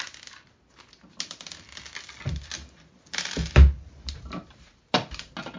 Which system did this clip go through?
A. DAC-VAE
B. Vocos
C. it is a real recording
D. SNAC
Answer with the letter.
C